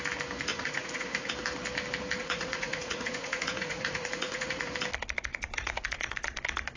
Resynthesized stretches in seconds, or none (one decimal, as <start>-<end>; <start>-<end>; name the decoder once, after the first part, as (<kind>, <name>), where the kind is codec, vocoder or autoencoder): 0.5-1.3 (vocoder, Vocos); 2.2-4.7; 5.3-6.2